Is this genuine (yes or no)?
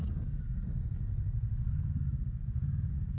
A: yes